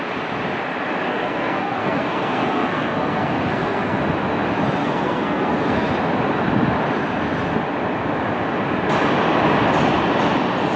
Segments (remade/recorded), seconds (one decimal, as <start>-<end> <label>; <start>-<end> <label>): 0.0-1.1 recorded; 1.1-4.0 remade; 4.0-4.8 recorded; 4.8-5.9 remade; 5.9-10.8 recorded